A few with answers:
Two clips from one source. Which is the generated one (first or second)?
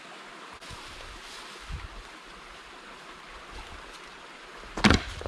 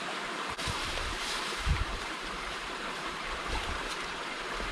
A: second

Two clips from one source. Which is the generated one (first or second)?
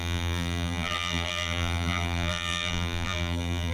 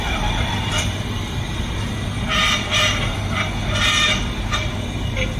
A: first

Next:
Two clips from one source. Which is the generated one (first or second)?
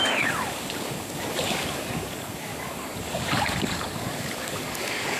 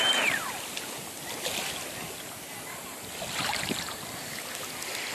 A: first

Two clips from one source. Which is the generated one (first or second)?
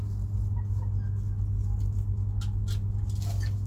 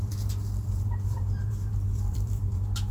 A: second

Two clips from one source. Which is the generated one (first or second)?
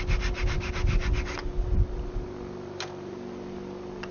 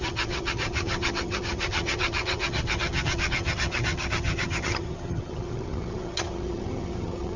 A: second